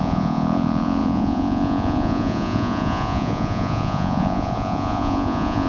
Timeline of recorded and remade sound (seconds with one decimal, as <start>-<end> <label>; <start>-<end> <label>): 0.0-5.7 remade